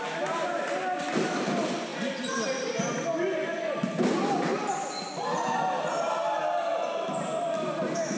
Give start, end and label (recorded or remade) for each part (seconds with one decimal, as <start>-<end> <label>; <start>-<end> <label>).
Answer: 0.0-8.2 recorded